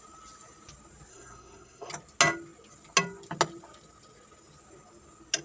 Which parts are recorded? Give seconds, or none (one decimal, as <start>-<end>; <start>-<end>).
0.0-1.1; 1.9-5.4